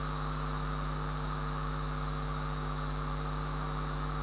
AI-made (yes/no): no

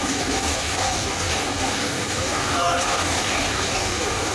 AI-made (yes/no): yes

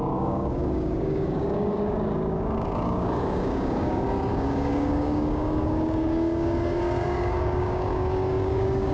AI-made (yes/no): yes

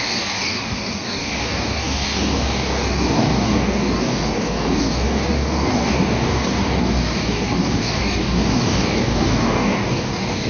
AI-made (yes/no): yes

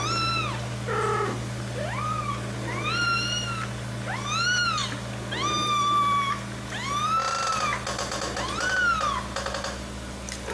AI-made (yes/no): no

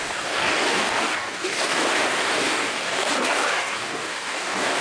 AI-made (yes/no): yes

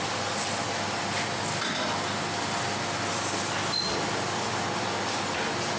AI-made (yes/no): no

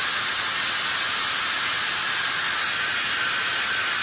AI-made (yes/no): no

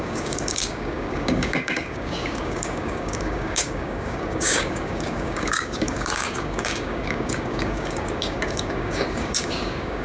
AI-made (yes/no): yes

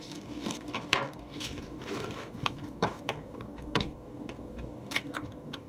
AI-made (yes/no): yes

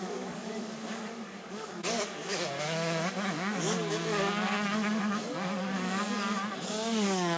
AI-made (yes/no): yes